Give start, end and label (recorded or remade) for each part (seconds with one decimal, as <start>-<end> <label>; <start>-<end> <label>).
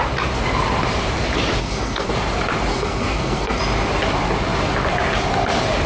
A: 0.0-1.6 recorded; 1.6-2.1 remade; 2.1-2.7 recorded; 2.7-3.6 remade; 3.6-5.9 recorded